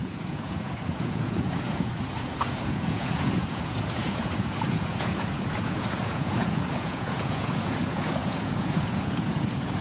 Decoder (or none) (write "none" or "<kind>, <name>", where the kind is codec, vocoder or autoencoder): vocoder, Vocos